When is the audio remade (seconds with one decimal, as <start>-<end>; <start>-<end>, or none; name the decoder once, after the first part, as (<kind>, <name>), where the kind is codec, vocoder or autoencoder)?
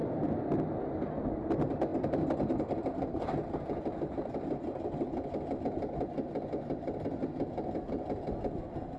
none